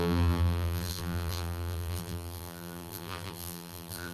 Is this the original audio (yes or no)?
no